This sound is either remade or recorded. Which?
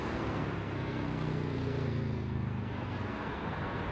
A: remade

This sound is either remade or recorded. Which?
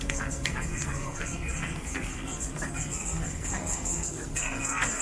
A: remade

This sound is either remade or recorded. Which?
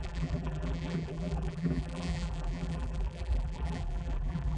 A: remade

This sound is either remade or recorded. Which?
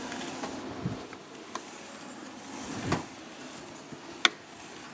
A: recorded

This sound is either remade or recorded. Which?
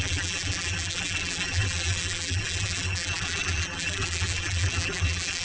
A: remade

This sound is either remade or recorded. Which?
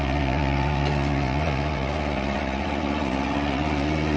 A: remade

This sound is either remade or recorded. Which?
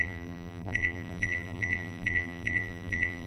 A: remade